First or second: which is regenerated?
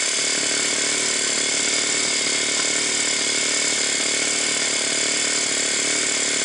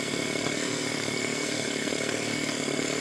second